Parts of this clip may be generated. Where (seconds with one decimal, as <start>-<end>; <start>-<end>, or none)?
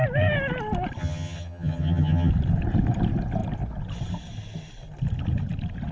1.0-2.3